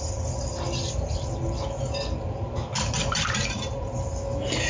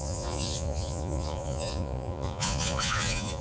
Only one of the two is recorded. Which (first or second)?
first